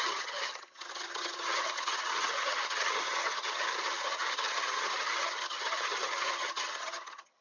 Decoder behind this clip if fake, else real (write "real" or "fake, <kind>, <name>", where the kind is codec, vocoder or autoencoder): fake, vocoder, HiFi-GAN